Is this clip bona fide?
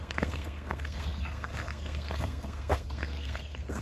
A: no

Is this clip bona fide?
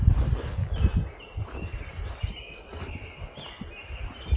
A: yes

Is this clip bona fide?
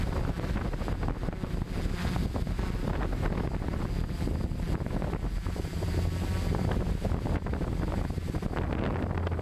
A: yes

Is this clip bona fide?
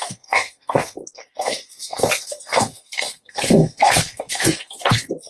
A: no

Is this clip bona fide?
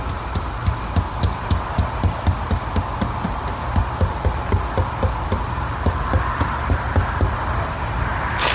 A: yes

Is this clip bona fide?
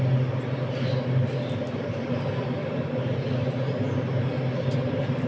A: yes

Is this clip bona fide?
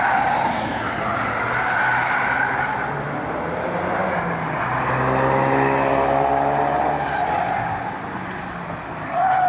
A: yes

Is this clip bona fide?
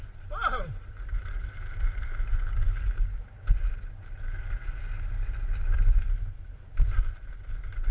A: yes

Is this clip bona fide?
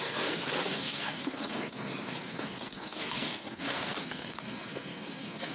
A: no